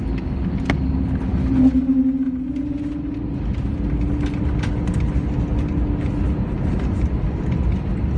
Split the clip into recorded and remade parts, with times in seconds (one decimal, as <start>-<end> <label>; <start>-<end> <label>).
0.0-8.2 recorded